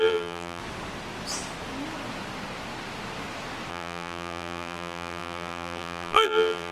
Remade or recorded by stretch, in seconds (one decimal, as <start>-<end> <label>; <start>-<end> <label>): 0.0-0.6 remade; 0.6-3.7 recorded; 3.7-6.7 remade